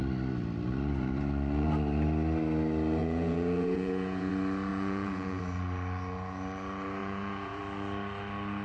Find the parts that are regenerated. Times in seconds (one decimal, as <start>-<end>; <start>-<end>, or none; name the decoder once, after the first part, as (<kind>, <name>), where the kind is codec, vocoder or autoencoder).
3.0-4.3 (vocoder, Vocos); 4.7-5.4; 7.0-7.6